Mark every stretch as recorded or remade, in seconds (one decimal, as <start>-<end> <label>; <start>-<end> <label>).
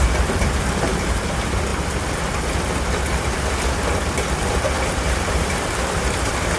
0.0-6.6 remade